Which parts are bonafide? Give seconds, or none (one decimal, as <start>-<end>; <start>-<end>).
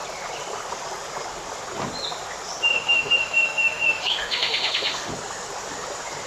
0.0-2.7; 5.1-6.3